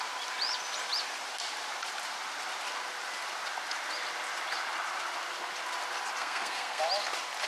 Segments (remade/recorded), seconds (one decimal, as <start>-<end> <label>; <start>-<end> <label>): 0.0-6.2 recorded; 6.2-6.8 remade; 6.8-7.5 recorded